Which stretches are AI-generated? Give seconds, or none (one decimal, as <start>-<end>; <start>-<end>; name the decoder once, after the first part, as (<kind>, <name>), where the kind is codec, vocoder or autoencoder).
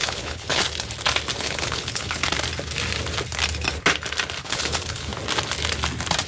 0.0-0.6 (codec, HILCodec); 1.4-2.2; 4.4-5.1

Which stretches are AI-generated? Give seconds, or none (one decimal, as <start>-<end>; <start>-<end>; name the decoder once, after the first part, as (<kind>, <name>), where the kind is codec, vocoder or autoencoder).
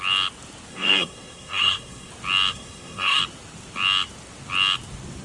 0.7-2.1 (codec, SNAC); 2.5-3.2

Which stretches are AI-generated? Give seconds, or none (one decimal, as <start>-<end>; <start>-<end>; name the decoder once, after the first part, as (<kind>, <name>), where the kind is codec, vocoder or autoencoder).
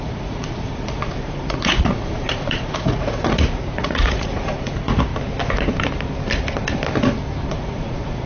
0.0-5.1 (vocoder, Vocos); 7.5-8.3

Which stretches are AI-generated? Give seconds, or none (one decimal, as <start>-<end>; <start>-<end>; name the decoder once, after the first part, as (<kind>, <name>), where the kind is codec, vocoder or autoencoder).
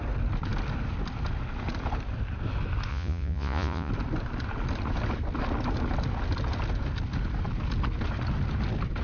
2.9-3.9 (vocoder, Vocos)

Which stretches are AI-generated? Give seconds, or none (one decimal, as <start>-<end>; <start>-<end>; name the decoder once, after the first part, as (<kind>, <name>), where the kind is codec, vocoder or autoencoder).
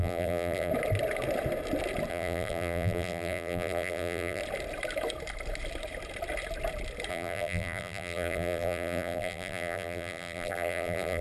0.0-0.7 (vocoder, BigVGAN v2); 2.1-4.4; 7.1-11.2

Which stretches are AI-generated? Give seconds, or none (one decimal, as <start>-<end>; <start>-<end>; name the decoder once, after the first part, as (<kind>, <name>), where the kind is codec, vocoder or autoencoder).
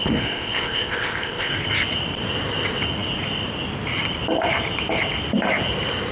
0.0-1.5 (codec, ZipCodec)